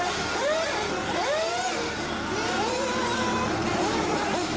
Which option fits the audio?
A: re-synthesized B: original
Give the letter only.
B